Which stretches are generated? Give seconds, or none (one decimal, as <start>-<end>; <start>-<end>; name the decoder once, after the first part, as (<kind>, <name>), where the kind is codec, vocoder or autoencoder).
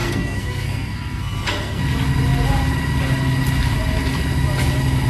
0.0-1.8 (codec, SNAC)